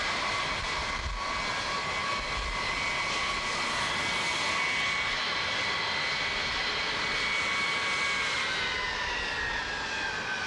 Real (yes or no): yes